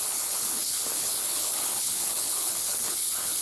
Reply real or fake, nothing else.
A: fake